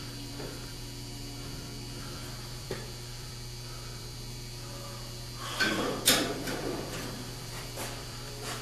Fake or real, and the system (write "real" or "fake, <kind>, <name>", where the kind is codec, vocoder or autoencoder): fake, vocoder, BigVGAN v2